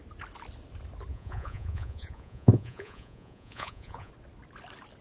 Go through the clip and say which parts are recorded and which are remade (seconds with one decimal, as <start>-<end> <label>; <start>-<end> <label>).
0.0-1.1 recorded; 1.1-4.1 remade; 4.1-5.0 recorded